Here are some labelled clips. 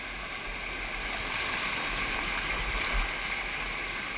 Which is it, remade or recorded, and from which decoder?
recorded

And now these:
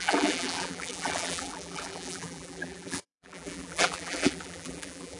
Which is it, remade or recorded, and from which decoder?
remade, vocoder, BigVGAN v2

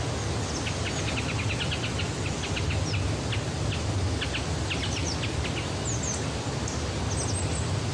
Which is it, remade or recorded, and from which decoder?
recorded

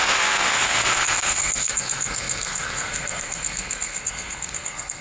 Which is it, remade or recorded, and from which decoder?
remade, codec, SNAC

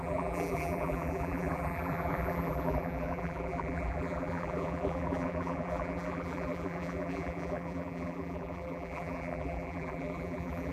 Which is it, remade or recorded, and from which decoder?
remade, vocoder, BigVGAN v2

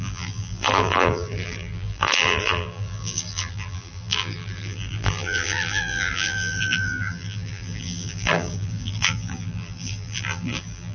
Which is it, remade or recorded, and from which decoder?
remade, vocoder, BigVGAN v2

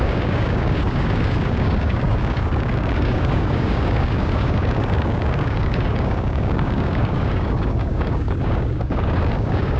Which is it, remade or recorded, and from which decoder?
remade, codec, DAC